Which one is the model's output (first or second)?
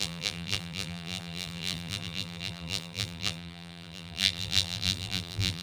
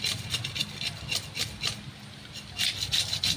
first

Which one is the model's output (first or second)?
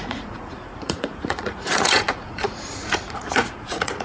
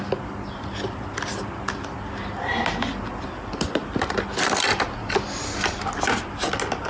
first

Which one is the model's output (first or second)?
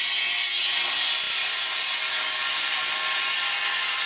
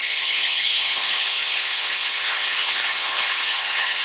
second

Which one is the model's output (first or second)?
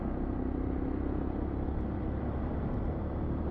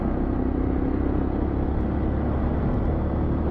first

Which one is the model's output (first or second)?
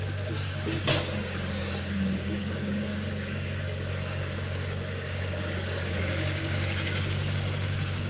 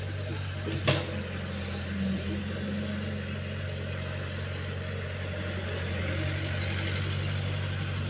first